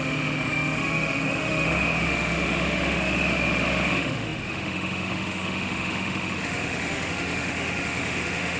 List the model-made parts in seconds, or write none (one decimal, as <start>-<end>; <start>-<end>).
0.0-8.6